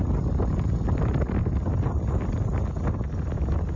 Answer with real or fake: real